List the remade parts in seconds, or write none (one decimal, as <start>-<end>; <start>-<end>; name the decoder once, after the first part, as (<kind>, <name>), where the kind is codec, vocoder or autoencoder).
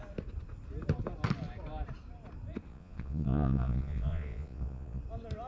2.7-5.0 (vocoder, Vocos)